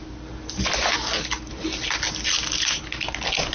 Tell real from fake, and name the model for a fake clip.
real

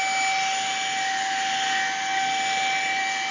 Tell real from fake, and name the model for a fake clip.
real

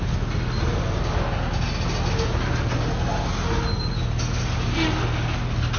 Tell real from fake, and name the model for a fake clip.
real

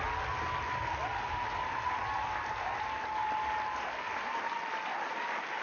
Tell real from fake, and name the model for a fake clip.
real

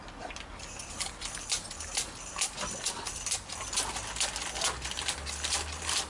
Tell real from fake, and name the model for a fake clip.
real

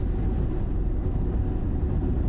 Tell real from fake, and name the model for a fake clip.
real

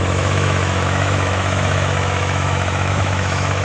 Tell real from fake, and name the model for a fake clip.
fake, autoencoder, DAC-VAE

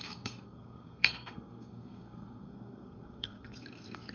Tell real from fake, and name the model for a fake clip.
fake, codec, SNAC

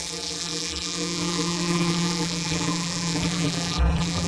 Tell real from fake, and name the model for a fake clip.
fake, vocoder, BigVGAN v2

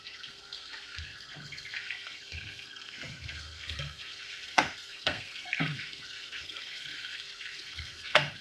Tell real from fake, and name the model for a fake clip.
fake, codec, SNAC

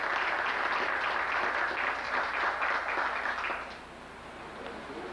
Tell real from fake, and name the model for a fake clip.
real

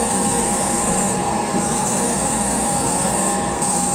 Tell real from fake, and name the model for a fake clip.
fake, codec, SNAC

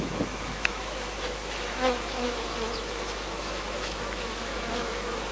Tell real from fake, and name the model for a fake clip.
fake, autoencoder, DAC-VAE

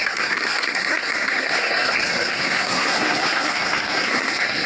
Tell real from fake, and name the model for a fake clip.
fake, codec, SNAC